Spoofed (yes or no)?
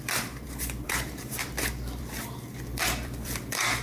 yes